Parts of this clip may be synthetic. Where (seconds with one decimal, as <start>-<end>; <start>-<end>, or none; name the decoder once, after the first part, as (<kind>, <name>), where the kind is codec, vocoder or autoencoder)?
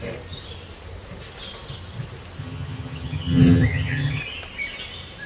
2.4-4.2 (vocoder, HiFi-GAN)